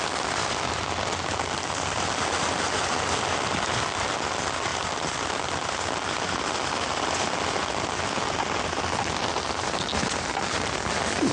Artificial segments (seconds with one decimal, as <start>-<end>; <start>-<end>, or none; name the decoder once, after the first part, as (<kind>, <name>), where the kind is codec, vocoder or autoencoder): none